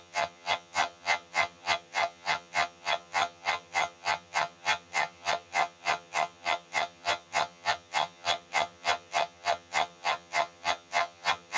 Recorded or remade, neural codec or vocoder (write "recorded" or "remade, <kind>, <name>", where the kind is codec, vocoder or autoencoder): remade, vocoder, HiFi-GAN